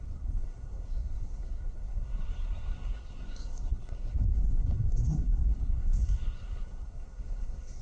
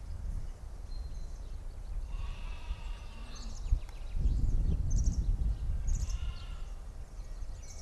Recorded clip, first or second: second